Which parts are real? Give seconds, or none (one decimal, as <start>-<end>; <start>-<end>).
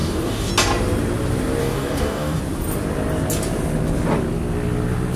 0.5-1.6; 2.4-5.2